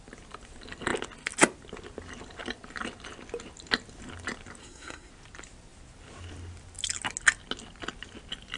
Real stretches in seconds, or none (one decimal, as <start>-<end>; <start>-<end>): 0.0-4.6; 5.1-8.6